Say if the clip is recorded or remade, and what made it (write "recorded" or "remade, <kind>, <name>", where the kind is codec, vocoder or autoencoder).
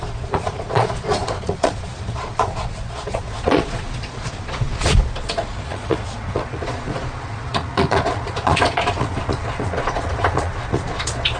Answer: remade, vocoder, Vocos